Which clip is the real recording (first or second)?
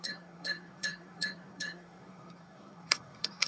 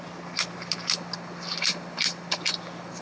second